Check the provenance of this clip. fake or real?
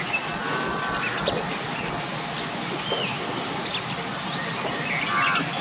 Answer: real